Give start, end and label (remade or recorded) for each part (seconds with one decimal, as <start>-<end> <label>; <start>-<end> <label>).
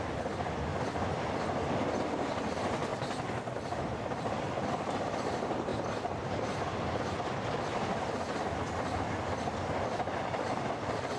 0.0-0.7 remade; 0.7-2.3 recorded; 2.3-2.9 remade; 2.9-4.4 recorded; 4.4-5.7 remade; 5.7-6.4 recorded; 6.4-11.2 remade